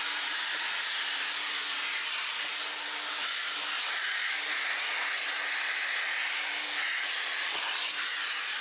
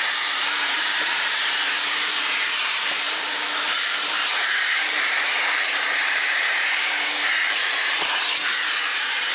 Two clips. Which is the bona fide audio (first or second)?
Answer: first